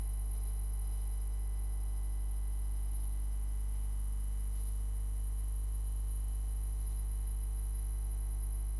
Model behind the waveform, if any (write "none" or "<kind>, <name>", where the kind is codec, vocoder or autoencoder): autoencoder, DAC-VAE